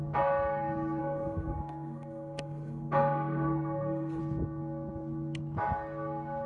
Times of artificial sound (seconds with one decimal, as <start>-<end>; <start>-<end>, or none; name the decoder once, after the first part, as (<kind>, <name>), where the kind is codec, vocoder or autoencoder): 1.0-4.2 (codec, SNAC)